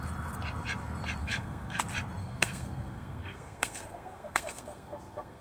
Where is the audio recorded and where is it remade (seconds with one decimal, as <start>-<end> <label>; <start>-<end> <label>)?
0.0-1.2 recorded; 1.2-1.8 remade; 1.8-2.2 recorded; 2.2-5.4 remade